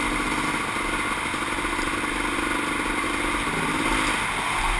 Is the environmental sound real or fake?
real